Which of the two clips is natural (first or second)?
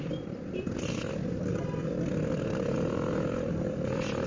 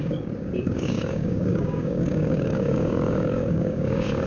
first